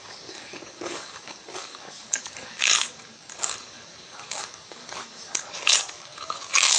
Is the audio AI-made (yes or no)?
yes